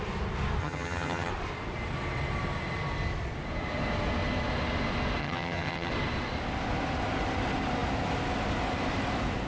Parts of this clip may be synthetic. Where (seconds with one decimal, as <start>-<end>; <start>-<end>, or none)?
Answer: 0.6-1.3; 5.2-5.9